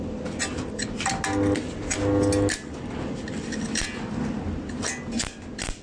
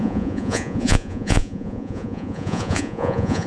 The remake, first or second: second